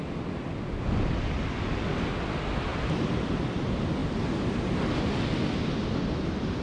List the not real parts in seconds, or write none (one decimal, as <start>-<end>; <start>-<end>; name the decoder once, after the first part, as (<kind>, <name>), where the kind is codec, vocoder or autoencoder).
none